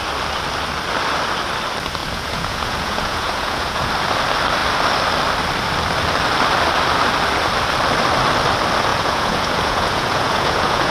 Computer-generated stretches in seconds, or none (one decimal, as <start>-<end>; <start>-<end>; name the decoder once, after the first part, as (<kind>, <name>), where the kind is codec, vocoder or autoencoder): 2.0-3.9 (vocoder, Vocos); 8.9-10.9